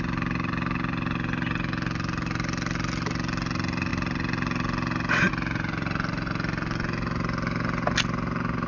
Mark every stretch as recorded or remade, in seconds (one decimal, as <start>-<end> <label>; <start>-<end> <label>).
0.0-8.7 recorded